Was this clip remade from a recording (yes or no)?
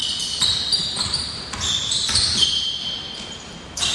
yes